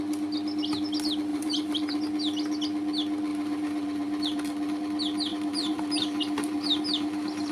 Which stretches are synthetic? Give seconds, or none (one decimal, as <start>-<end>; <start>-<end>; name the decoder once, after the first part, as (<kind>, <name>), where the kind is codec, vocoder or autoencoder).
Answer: 1.3-2.0 (vocoder, BigVGAN v2); 3.3-4.8; 5.3-7.5